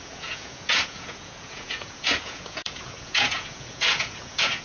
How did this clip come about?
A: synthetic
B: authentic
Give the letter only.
A